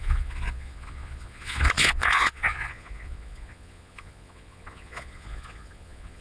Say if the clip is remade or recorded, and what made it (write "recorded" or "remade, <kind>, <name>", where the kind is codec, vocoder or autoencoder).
remade, vocoder, Vocos